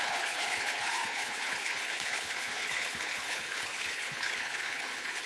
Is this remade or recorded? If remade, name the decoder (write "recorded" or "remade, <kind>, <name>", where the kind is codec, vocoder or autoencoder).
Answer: remade, codec, HILCodec